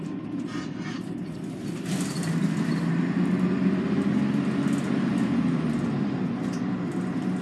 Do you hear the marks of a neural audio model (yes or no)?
no